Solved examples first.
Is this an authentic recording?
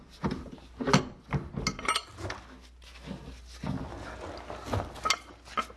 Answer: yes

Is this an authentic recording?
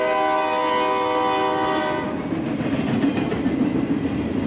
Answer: yes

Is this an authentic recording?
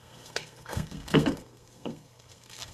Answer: no